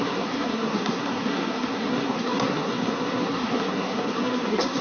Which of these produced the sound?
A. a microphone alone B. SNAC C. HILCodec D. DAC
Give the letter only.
B